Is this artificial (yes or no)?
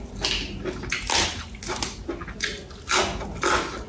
no